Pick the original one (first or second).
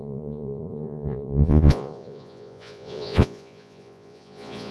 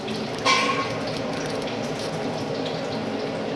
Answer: second